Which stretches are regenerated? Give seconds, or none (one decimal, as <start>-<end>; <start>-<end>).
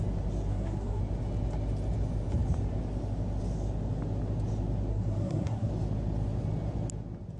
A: 0.5-1.0; 4.9-5.7